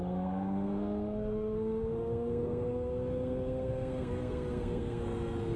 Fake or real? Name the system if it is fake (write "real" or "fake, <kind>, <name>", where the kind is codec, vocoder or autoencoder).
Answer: fake, codec, SNAC